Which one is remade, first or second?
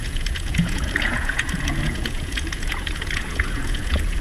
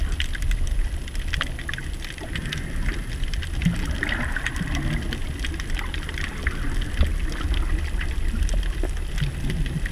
first